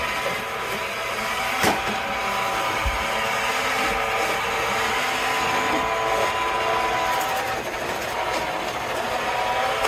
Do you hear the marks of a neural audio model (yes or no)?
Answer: no